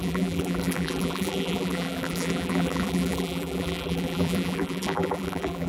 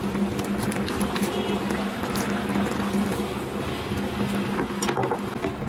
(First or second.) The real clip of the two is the second